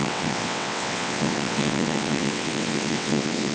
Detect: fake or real fake